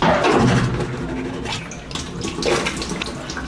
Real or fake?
real